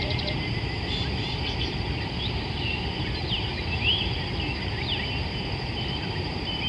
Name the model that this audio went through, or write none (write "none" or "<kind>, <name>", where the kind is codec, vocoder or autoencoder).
vocoder, BigVGAN v2